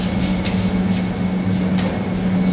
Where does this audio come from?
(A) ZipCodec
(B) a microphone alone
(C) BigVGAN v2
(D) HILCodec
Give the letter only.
B